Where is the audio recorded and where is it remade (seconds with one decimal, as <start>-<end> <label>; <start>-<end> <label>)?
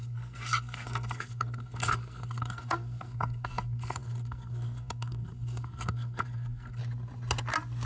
0.0-6.8 remade; 6.8-7.9 recorded